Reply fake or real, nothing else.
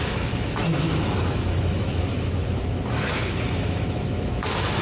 fake